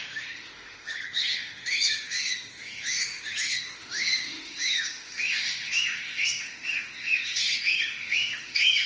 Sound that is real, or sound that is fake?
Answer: fake